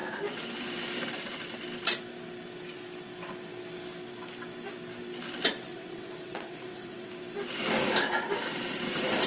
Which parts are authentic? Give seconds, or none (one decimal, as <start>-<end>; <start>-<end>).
0.0-5.7; 7.1-9.3